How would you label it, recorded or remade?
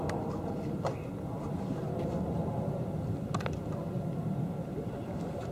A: recorded